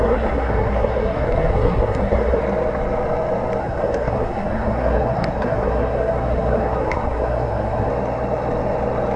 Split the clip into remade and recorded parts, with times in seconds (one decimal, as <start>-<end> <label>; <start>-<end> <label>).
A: 0.0-2.4 remade; 2.4-3.6 recorded; 3.6-7.9 remade; 7.9-9.2 recorded

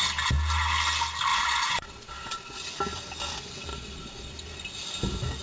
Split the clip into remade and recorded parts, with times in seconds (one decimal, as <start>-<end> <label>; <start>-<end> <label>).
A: 0.0-1.3 recorded; 1.3-2.6 remade; 2.6-3.7 recorded; 3.7-4.3 remade; 4.3-5.4 recorded

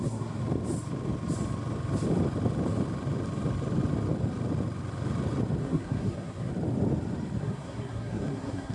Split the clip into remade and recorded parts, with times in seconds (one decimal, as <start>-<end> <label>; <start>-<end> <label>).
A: 0.0-0.4 remade; 0.4-5.6 recorded; 5.6-6.5 remade; 6.5-7.4 recorded; 7.4-8.7 remade

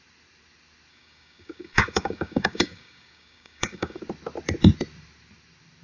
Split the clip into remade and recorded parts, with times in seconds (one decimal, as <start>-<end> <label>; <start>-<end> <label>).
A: 0.0-0.9 recorded; 0.9-4.0 remade; 4.0-5.8 recorded